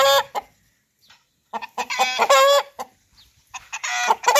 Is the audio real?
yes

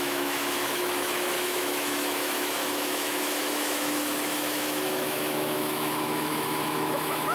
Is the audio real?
no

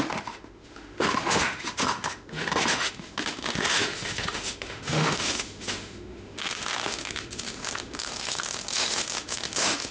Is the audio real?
no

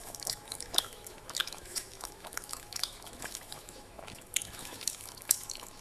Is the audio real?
no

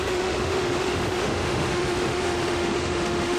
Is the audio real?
no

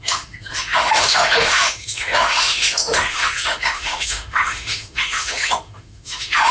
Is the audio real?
no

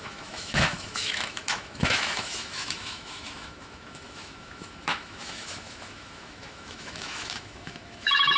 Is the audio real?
no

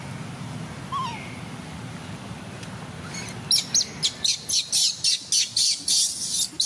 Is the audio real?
yes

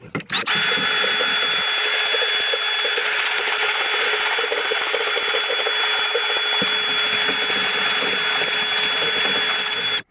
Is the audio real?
yes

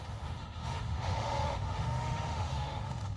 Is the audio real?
no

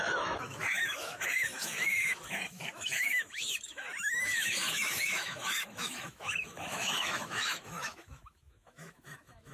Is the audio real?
no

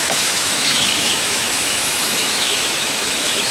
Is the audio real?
no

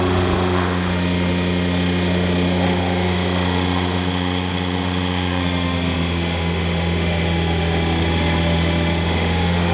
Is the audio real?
no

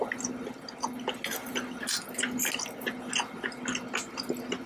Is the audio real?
yes